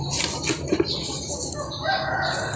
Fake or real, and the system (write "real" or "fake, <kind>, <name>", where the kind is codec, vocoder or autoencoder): real